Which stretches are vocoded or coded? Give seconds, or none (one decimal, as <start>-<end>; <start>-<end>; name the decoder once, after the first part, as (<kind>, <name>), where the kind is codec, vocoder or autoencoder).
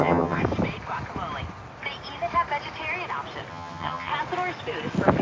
0.0-0.4 (vocoder, HiFi-GAN); 3.5-4.1